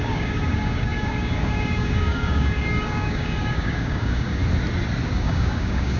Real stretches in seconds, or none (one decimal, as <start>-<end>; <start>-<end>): 4.4-5.1